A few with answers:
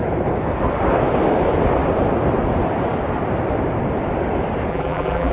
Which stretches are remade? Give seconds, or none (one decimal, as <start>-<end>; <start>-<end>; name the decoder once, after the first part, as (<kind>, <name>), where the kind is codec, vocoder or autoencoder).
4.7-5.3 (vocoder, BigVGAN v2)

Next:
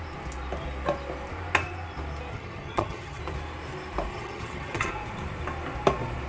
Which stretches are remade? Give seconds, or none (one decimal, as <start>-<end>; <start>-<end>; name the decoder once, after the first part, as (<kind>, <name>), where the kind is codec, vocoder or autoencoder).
2.3-3.2 (vocoder, HiFi-GAN); 4.1-4.9

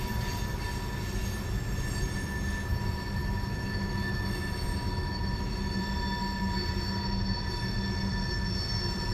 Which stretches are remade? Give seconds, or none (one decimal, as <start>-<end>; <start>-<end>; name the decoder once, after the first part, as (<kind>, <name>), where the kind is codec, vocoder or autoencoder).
3.2-5.8 (autoencoder, DAC-VAE)

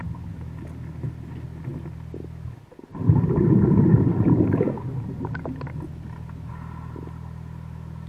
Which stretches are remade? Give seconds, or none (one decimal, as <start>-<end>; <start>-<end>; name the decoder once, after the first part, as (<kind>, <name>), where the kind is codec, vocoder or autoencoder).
none

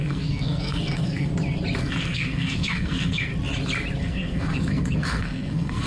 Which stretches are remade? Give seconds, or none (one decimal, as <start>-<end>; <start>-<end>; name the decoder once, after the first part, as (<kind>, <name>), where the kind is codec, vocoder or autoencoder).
0.0-1.3 (codec, SNAC); 1.8-3.3; 4.0-5.9

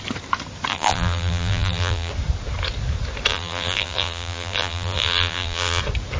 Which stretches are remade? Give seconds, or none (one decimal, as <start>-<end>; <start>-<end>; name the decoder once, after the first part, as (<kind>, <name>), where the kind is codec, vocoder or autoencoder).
0.7-2.1 (vocoder, BigVGAN v2); 3.3-5.8

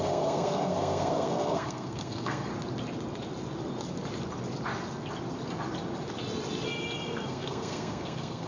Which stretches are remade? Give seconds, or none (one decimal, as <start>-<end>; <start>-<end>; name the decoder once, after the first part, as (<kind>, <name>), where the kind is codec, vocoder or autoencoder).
0.0-2.5 (codec, SNAC); 7.3-8.5

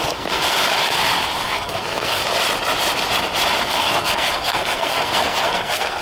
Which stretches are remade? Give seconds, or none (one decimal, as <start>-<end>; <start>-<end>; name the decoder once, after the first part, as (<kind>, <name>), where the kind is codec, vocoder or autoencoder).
0.0-0.6 (codec, SNAC); 1.4-2.2; 3.6-6.0